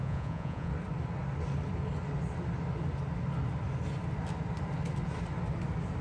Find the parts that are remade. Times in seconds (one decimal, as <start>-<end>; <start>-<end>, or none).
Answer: 0.0-0.7